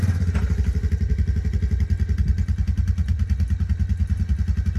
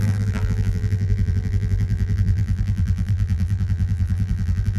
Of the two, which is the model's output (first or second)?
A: second